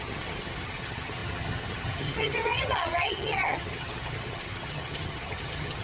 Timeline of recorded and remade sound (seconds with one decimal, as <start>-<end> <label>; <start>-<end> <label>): 0.0-5.8 remade